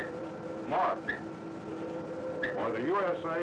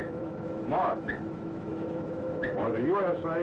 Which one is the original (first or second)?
first